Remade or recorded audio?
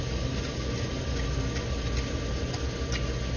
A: recorded